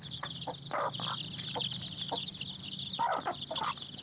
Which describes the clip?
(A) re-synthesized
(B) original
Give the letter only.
A